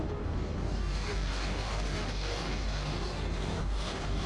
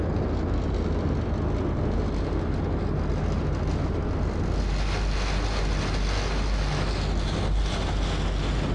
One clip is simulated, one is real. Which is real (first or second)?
second